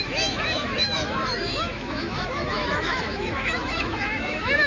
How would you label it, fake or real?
fake